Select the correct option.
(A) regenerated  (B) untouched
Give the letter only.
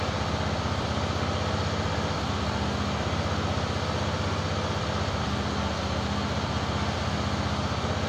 B